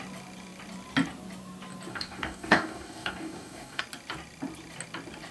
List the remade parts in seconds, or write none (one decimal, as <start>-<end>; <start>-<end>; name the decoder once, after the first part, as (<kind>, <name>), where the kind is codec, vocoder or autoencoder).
1.9-3.8 (codec, DAC)